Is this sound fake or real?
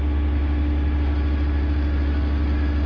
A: real